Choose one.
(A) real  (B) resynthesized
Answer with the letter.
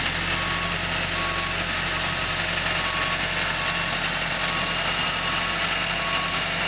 A